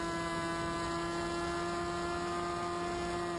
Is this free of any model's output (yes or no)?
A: yes